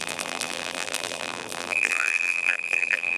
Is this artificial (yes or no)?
yes